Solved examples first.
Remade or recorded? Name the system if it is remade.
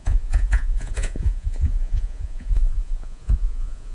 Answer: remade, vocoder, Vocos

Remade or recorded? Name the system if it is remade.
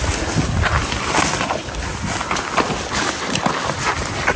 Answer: recorded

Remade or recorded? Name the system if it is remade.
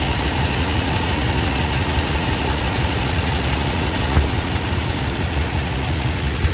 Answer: remade, vocoder, Vocos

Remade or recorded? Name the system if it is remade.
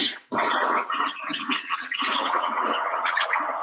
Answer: remade, vocoder, WaveNeXt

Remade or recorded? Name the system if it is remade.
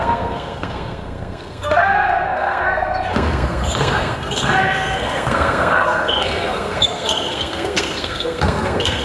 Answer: remade, codec, SNAC